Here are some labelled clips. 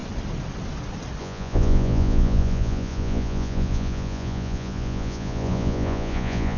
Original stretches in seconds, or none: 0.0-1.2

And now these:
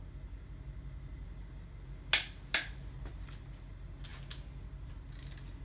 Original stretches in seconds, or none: 0.0-5.6